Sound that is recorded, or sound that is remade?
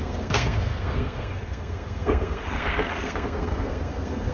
remade